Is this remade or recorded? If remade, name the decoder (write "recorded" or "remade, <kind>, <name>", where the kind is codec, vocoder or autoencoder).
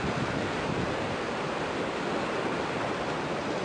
remade, vocoder, BigVGAN v2